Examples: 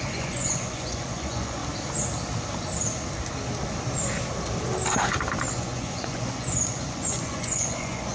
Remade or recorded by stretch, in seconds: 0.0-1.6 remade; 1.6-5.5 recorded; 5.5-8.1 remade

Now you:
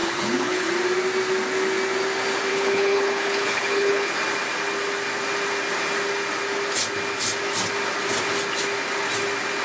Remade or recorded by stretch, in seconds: 0.0-0.7 remade; 0.7-2.5 recorded; 2.5-4.1 remade; 4.1-9.6 recorded

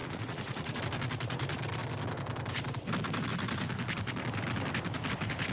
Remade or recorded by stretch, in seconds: 0.0-0.8 remade; 0.8-5.5 recorded

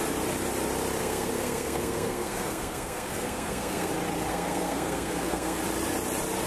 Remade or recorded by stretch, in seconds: 0.0-1.0 recorded; 1.0-3.9 remade; 3.9-4.3 recorded; 4.3-5.6 remade; 5.6-6.5 recorded